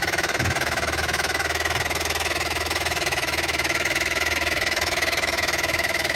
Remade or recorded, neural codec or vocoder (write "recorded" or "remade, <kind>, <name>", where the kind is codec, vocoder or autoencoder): remade, autoencoder, DAC-VAE